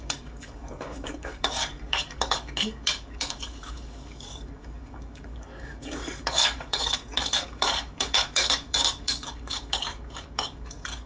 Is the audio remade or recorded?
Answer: remade